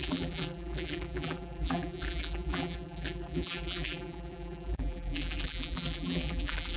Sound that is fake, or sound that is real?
fake